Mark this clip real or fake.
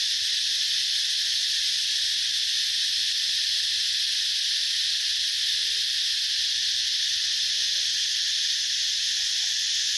real